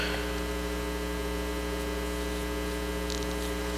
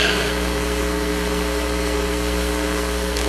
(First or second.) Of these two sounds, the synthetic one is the second